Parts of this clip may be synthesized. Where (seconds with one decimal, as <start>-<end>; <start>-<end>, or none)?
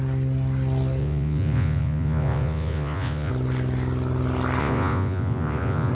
1.0-3.3; 4.6-5.9